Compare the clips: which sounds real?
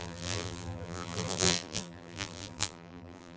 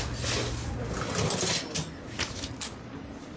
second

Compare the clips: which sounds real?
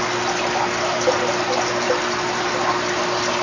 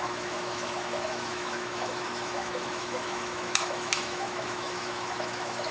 first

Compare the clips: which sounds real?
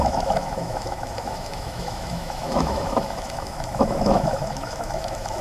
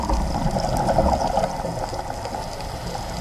second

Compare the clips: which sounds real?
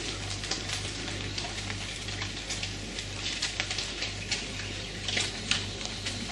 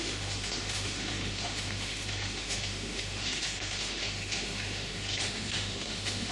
first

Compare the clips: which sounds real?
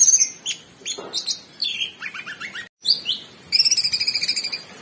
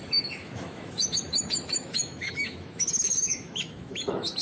first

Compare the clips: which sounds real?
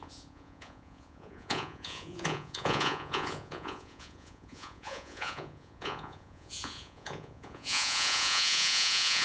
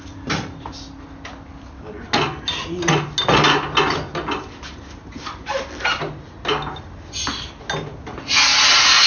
second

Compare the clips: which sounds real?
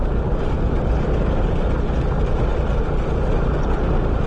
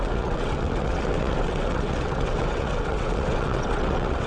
first